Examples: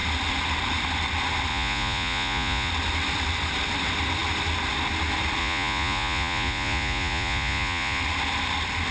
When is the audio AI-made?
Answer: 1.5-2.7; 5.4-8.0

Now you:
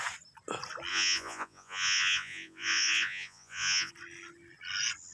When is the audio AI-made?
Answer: 0.9-3.9

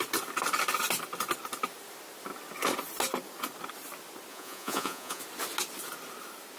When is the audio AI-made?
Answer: 4.3-5.2